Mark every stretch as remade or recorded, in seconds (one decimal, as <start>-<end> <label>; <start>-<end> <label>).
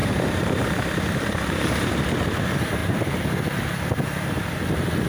0.0-1.9 remade; 1.9-5.1 recorded